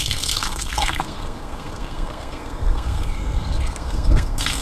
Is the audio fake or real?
fake